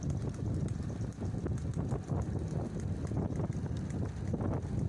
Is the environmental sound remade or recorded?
recorded